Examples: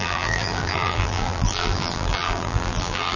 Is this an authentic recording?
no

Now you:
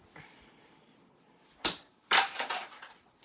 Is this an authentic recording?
yes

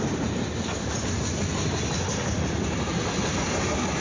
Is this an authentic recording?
yes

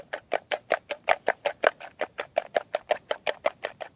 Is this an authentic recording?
no